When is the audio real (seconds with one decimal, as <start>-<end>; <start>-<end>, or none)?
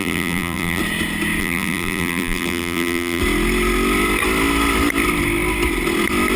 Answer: 0.8-1.4; 3.2-6.4